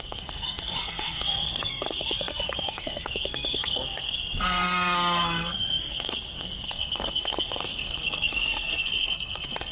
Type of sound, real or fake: fake